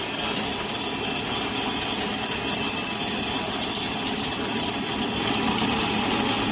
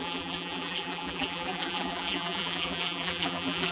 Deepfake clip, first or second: second